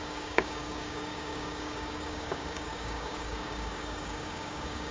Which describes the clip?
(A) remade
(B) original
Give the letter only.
A